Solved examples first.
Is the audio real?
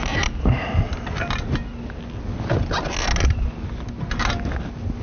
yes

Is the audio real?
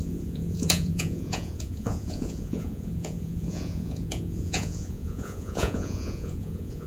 no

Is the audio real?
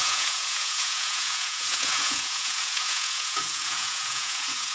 no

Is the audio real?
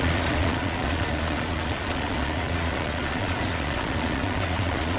no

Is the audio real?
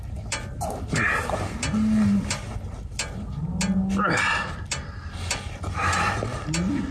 yes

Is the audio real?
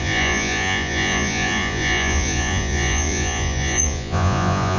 no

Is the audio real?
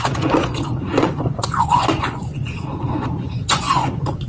no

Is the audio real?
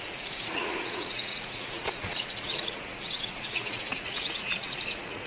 no